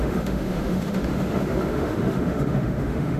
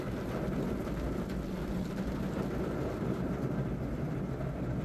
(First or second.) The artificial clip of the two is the first